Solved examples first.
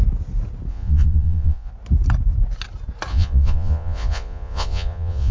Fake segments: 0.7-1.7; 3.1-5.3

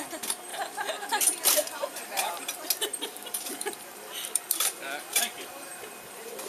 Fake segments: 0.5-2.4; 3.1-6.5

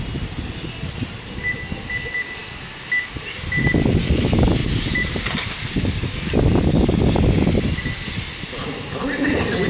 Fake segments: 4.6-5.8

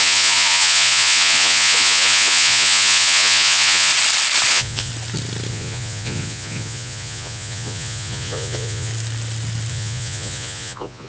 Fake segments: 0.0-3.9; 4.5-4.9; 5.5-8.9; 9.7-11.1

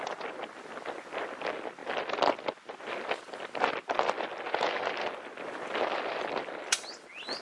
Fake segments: none

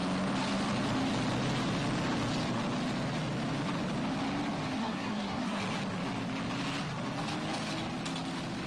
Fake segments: 4.8-5.6

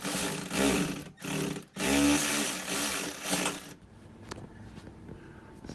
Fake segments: none

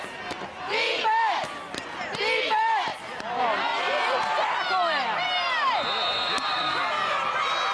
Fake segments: 2.9-5.2